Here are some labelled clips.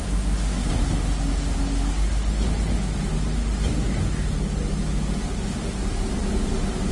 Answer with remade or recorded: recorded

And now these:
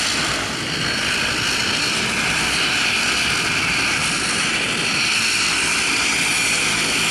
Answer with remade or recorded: recorded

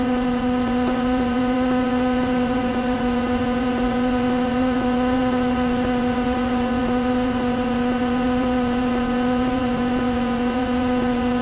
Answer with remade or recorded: remade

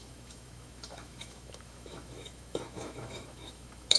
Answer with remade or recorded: remade